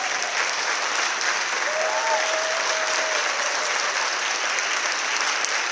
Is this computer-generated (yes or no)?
yes